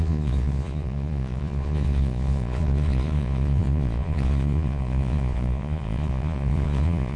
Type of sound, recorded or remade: remade